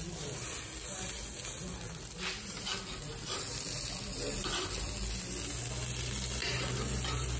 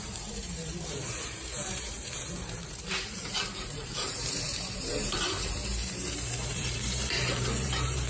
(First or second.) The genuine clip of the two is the first